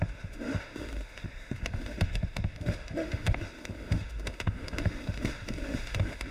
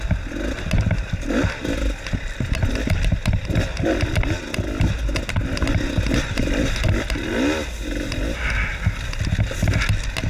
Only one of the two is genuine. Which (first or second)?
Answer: second